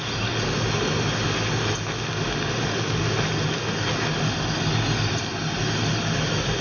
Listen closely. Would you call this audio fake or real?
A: real